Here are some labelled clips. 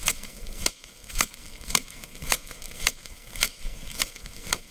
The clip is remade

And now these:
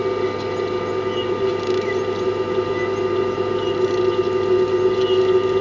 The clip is recorded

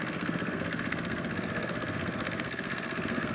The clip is remade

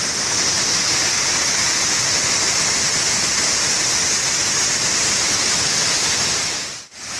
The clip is recorded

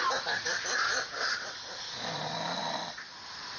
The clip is recorded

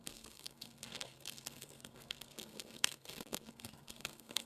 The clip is remade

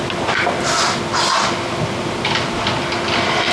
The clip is recorded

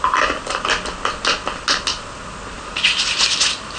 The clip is recorded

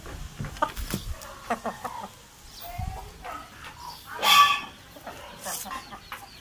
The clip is recorded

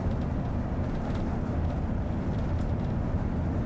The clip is recorded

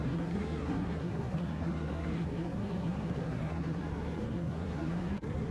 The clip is remade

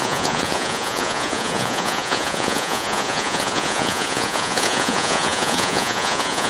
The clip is remade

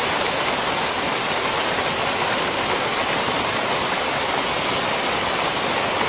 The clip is recorded